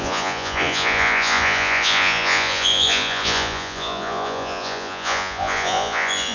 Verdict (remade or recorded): remade